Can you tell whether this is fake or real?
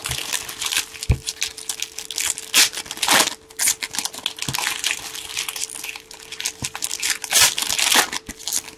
real